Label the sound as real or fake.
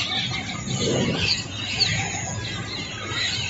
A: real